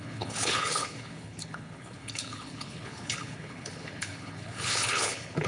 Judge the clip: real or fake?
fake